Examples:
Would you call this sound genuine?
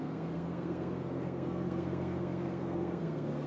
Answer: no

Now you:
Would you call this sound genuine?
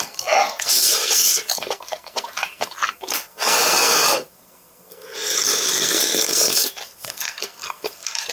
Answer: no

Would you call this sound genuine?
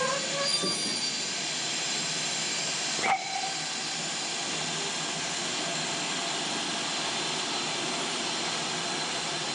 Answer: yes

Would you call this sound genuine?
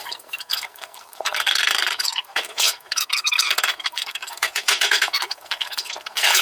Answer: no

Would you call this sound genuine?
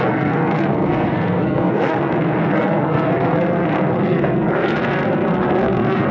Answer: no